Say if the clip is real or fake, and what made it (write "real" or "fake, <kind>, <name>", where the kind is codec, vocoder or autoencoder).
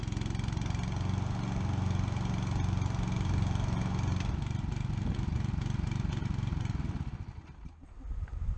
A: real